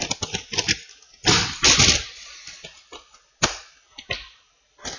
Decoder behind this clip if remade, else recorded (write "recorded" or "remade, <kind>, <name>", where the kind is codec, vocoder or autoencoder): recorded